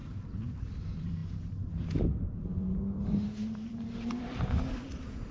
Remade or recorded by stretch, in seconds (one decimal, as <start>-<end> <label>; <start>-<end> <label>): 0.0-5.3 remade